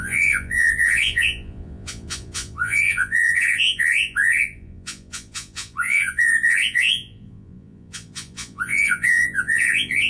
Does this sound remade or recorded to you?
remade